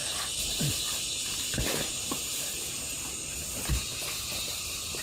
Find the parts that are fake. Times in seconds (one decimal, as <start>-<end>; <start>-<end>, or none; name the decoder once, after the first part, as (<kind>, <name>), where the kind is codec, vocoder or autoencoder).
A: 0.0-5.0 (vocoder, BigVGAN v2)